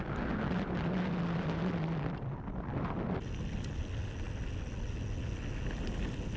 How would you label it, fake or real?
real